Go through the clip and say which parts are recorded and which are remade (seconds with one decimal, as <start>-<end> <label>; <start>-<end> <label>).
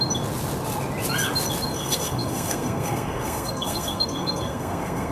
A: 0.0-1.7 recorded; 1.7-5.1 remade